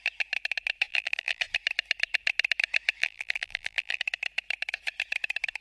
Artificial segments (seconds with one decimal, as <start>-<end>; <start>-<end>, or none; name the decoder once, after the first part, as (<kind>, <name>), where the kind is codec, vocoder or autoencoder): 0.9-1.4 (vocoder, BigVGAN v2); 3.0-4.0